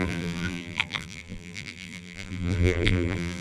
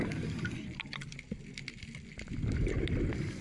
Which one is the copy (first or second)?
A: first